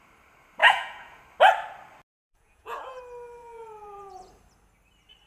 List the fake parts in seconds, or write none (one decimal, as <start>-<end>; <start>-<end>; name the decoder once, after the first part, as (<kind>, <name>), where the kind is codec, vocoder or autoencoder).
0.6-1.2 (vocoder, Vocos); 2.1-3.0; 3.4-4.3